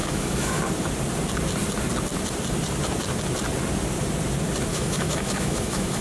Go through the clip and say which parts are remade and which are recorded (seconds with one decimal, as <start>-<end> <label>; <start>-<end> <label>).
0.0-0.6 remade; 0.6-4.7 recorded; 4.7-6.0 remade